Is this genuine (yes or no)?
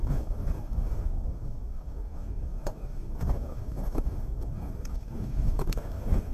no